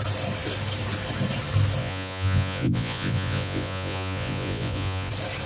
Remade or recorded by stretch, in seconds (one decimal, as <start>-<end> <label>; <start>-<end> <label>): 0.0-1.8 recorded; 1.8-5.1 remade; 5.1-5.5 recorded